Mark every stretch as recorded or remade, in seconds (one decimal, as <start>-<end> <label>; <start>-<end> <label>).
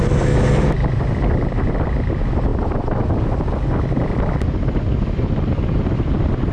0.0-6.5 remade